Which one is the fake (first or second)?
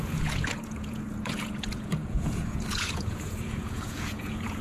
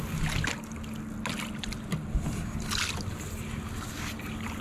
first